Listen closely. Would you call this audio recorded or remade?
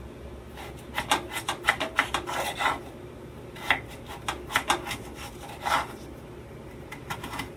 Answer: recorded